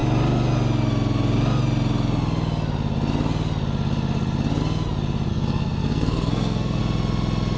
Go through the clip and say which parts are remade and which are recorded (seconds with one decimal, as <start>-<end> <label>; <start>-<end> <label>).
0.0-5.3 recorded; 5.3-6.8 remade; 6.8-7.6 recorded